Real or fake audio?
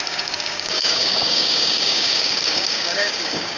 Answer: fake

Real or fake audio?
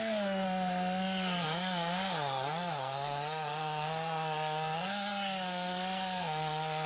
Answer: fake